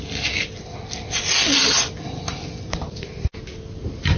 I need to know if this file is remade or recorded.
recorded